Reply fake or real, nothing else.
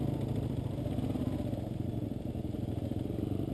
real